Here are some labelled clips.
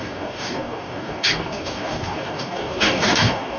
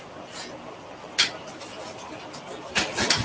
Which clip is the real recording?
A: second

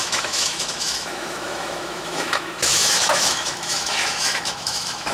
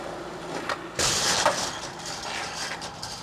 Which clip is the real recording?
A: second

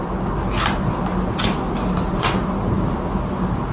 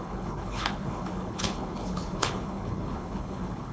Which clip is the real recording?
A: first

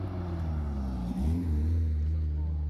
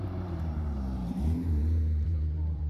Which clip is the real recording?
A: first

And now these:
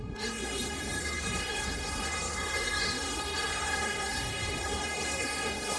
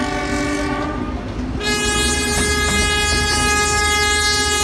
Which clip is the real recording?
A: second